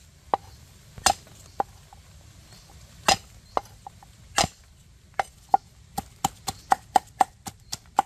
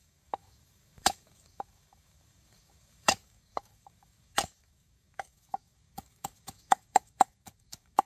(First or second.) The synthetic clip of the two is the second